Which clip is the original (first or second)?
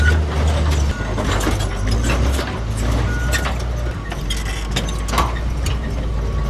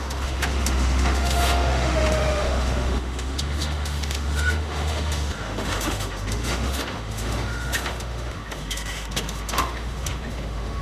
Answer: first